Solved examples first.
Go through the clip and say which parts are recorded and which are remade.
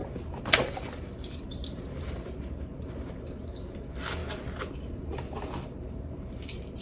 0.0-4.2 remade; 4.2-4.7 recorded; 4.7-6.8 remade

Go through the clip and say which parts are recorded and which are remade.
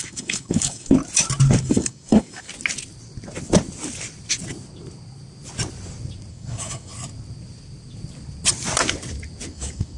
0.0-1.0 remade; 1.0-1.6 recorded; 1.6-2.5 remade; 2.5-6.3 recorded; 6.3-6.9 remade; 6.9-9.5 recorded; 9.5-10.0 remade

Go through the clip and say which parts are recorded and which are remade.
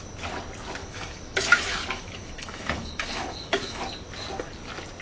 0.0-0.8 recorded; 0.8-3.8 remade; 3.8-5.0 recorded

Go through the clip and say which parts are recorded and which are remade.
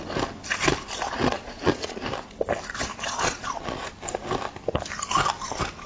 0.0-1.4 recorded; 1.4-2.0 remade; 2.0-2.9 recorded; 2.9-3.9 remade; 3.9-5.9 recorded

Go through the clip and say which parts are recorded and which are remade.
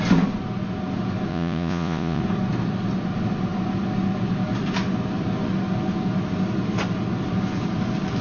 0.0-1.3 recorded; 1.3-2.2 remade; 2.2-8.2 recorded